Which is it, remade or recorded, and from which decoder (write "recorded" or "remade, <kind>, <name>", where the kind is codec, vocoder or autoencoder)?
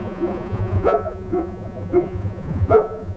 remade, vocoder, Vocos